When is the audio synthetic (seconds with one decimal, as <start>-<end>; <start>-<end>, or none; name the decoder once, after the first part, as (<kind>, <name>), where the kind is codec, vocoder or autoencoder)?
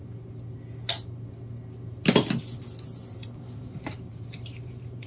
3.1-5.1 (vocoder, BigVGAN v2)